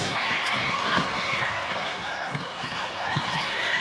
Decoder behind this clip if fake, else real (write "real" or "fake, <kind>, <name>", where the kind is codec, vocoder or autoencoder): fake, codec, SNAC